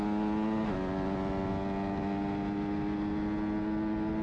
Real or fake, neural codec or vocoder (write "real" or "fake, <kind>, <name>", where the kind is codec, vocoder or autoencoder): real